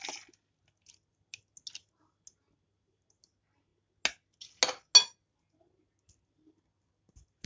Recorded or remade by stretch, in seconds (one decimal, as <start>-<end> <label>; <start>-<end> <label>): 0.0-7.5 recorded